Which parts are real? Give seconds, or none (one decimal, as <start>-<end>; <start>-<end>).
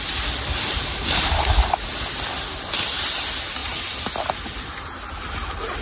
0.0-0.5; 1.4-5.8